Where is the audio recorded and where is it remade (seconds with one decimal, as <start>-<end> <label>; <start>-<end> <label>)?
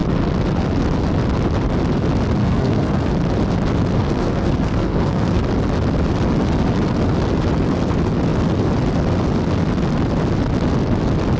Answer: 0.0-2.4 recorded; 2.4-3.1 remade; 3.1-4.0 recorded; 4.0-5.4 remade; 5.4-11.4 recorded